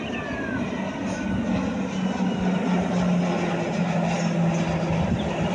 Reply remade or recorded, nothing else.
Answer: recorded